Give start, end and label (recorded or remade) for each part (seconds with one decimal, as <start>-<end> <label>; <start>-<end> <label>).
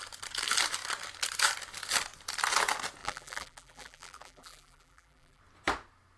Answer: 0.0-3.0 recorded; 3.0-5.4 remade; 5.4-6.2 recorded